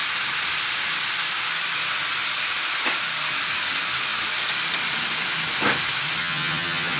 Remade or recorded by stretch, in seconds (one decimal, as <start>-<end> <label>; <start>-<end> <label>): 0.0-6.2 recorded; 6.2-7.0 remade